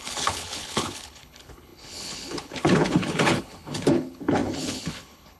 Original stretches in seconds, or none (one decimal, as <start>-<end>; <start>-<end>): none